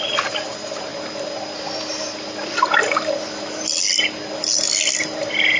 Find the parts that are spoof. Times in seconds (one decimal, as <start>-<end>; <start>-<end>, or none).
none